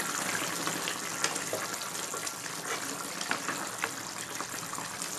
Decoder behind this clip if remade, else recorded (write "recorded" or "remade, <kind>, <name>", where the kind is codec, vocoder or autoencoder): recorded